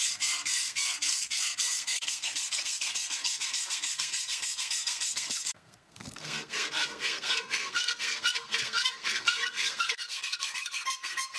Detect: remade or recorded remade